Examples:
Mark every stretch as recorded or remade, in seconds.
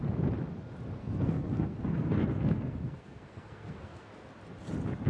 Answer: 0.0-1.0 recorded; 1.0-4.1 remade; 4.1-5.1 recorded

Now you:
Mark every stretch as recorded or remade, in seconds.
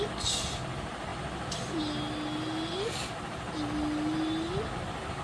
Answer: 0.0-5.2 recorded